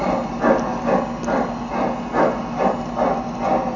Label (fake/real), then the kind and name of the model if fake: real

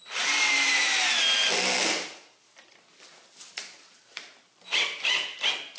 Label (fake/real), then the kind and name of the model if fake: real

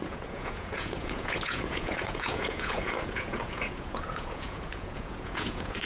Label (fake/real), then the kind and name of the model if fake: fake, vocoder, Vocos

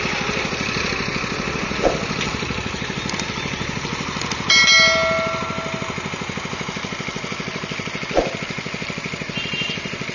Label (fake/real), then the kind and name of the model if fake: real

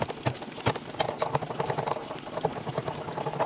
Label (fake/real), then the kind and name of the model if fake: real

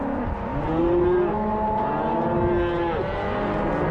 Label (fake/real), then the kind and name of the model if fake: real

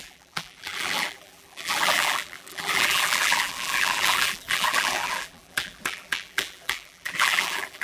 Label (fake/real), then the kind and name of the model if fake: fake, vocoder, BigVGAN v2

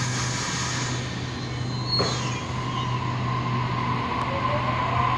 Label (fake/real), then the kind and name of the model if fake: real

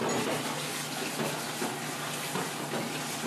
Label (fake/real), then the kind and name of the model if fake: real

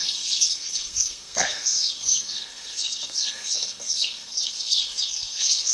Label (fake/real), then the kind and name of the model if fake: fake, codec, SNAC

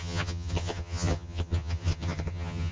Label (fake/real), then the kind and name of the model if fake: fake, vocoder, HiFi-GAN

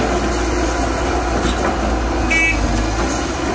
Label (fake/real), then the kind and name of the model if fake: real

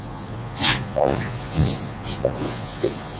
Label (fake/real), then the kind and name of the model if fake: fake, vocoder, Vocos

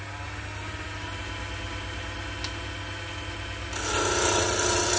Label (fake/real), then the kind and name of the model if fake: real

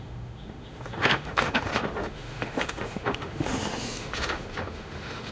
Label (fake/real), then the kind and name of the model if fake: fake, autoencoder, DAC-VAE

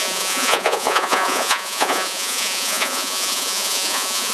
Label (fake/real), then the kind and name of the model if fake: fake, vocoder, Vocos